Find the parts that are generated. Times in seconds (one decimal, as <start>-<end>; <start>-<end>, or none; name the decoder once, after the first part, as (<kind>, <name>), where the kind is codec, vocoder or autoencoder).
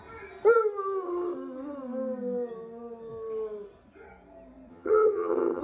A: 4.7-5.6 (vocoder, HiFi-GAN)